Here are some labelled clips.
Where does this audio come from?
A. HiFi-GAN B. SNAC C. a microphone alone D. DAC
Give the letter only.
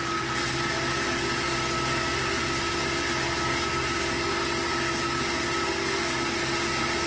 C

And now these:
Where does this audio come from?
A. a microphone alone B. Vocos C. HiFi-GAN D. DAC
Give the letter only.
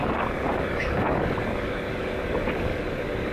D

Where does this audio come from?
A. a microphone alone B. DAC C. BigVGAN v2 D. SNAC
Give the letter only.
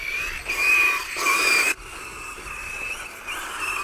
A